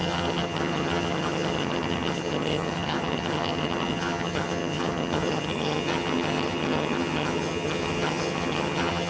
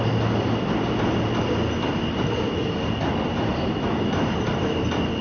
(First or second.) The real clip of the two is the second